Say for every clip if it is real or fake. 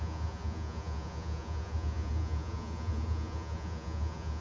fake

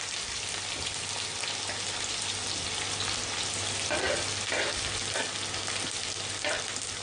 real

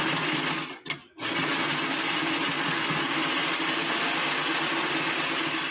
real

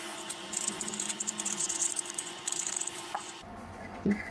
fake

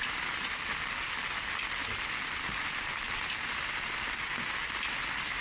real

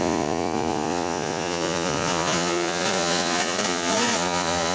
fake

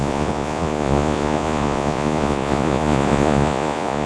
fake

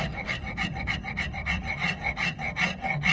real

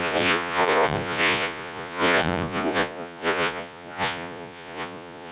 fake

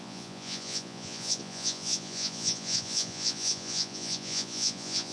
fake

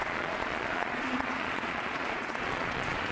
fake